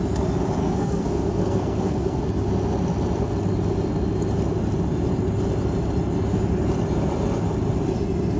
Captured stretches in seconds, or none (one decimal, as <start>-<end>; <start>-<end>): 0.0-0.6; 2.2-8.4